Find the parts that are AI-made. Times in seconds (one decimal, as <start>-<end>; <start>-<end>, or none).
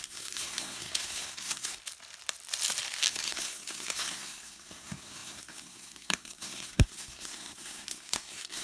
0.0-1.8; 3.1-8.6